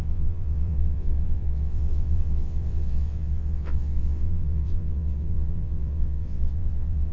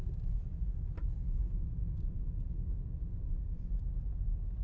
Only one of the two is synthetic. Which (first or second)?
first